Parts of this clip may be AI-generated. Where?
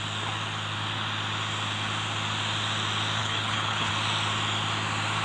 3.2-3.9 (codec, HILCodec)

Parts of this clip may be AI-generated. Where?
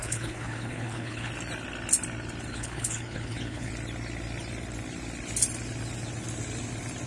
0.0-1.3 (codec, HILCodec); 2.5-3.7